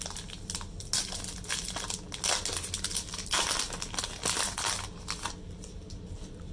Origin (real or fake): real